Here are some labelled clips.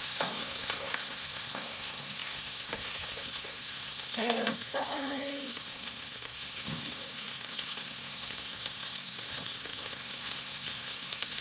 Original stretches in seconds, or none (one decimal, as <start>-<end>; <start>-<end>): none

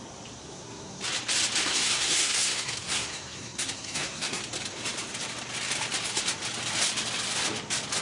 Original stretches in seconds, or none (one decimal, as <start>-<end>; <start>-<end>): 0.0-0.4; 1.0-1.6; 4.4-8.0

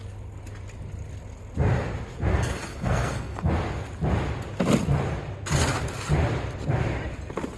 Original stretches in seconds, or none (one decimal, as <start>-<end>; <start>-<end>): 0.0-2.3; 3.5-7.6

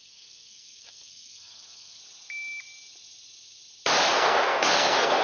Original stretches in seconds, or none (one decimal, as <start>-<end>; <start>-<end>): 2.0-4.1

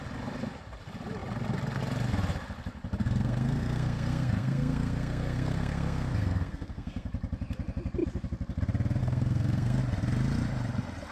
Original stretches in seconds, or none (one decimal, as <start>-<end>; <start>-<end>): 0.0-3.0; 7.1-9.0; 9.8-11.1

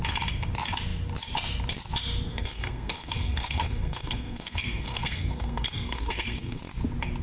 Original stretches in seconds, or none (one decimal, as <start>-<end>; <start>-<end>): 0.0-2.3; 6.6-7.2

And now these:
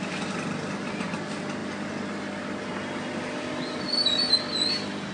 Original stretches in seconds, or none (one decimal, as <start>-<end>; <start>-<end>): 0.0-5.1

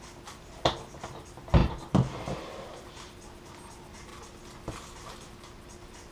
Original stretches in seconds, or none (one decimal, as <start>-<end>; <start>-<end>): 0.0-6.1